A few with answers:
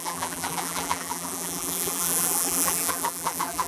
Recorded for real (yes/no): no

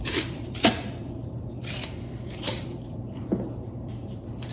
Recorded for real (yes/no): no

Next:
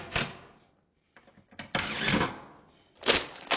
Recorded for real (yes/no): yes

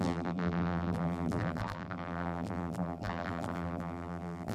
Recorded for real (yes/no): no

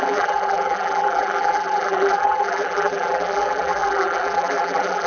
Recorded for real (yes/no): no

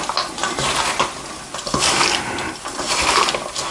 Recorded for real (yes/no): yes